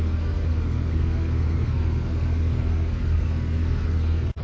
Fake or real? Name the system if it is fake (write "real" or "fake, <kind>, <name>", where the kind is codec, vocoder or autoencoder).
fake, codec, SNAC